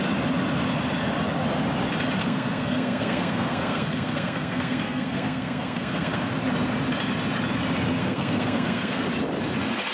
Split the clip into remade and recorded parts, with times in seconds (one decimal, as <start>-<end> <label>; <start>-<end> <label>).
0.0-2.2 recorded; 2.2-6.3 remade; 6.3-8.0 recorded; 8.0-9.0 remade; 9.0-9.9 recorded